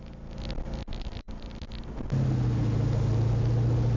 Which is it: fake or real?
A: real